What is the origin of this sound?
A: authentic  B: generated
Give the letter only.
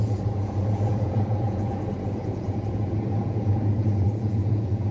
B